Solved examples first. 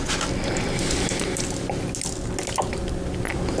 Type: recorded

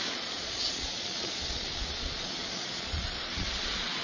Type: remade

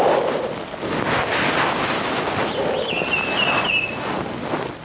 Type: recorded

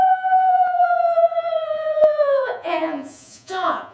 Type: remade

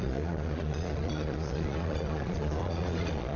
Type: remade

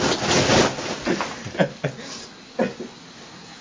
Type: recorded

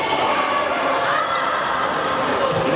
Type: recorded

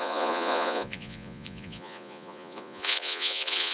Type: remade